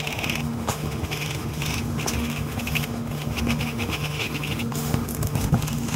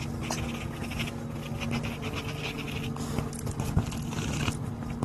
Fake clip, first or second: first